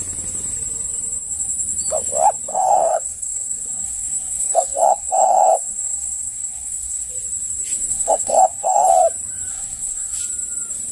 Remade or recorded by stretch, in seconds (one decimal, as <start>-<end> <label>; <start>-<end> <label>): 0.0-2.5 recorded; 2.5-7.1 remade; 7.1-7.9 recorded; 7.9-8.9 remade; 8.9-9.5 recorded; 9.5-10.2 remade; 10.2-10.9 recorded